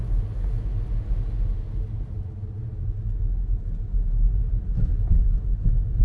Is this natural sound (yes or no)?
yes